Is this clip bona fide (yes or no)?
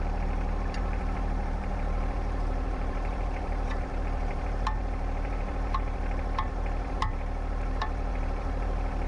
no